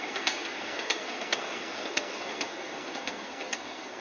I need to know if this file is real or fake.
fake